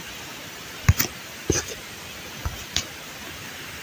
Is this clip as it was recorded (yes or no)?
yes